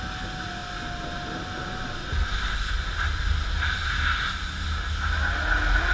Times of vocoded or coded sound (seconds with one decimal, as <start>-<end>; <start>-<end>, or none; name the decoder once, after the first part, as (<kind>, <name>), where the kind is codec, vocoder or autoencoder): none